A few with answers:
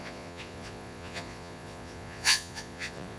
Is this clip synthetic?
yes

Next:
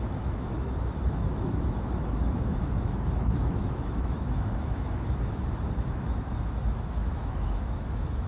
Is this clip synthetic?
yes